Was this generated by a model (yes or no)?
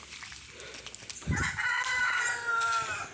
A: no